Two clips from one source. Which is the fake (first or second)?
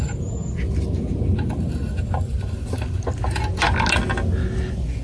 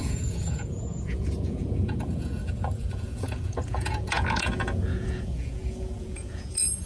second